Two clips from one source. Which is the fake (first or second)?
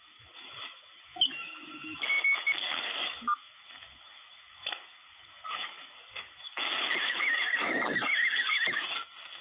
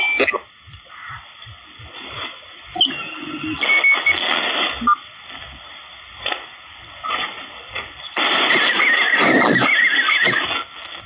first